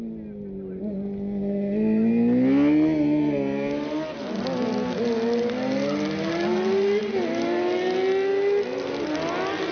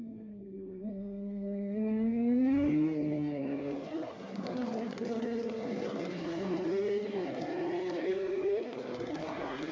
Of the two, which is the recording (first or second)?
first